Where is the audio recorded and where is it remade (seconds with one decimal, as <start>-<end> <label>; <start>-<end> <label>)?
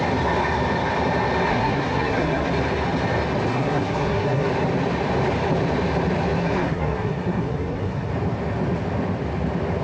0.0-1.5 recorded; 1.5-2.5 remade; 2.5-3.5 recorded; 3.5-4.5 remade; 4.5-6.4 recorded; 6.4-8.1 remade; 8.1-9.8 recorded